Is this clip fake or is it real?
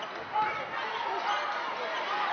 real